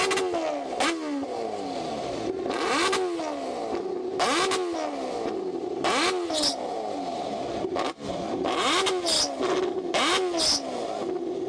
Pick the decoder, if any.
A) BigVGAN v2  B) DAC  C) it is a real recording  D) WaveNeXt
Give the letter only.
C